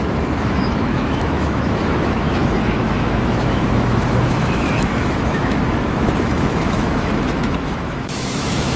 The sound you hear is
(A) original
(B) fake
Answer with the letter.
B